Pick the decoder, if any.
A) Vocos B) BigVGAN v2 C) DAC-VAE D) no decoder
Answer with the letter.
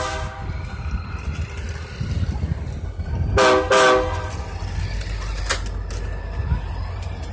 D